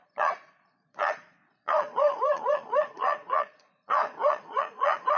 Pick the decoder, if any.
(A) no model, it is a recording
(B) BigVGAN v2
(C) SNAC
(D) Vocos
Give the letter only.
D